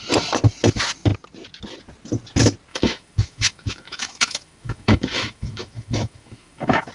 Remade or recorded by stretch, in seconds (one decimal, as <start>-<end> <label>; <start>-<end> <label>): 0.0-2.7 recorded; 2.7-6.9 remade